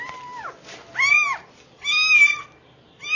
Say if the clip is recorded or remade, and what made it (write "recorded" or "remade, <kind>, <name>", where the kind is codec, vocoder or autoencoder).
recorded